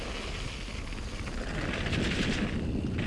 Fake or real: real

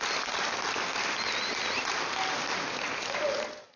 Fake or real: real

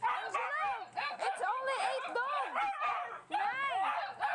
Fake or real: real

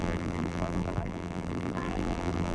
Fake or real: fake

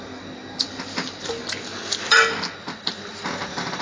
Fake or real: real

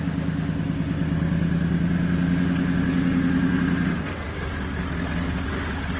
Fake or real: real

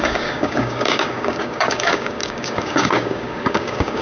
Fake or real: fake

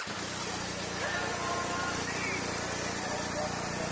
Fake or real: real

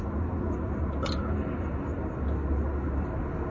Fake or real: real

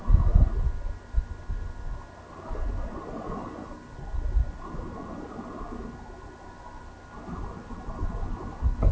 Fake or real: real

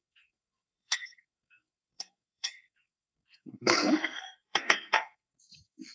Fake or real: fake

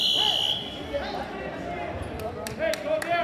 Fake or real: real